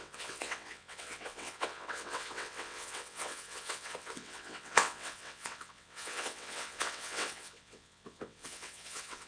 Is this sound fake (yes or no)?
yes